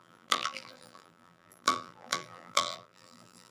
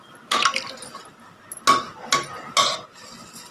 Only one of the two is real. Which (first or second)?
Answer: second